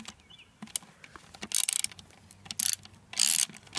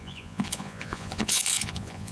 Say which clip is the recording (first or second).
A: first